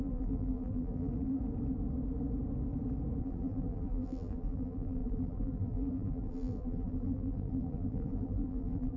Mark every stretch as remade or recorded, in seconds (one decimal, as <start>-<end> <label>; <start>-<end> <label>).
0.0-1.4 remade; 1.4-3.2 recorded; 3.2-9.0 remade